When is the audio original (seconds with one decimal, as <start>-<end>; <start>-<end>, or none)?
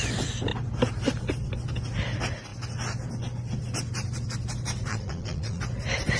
0.0-4.9; 5.6-6.2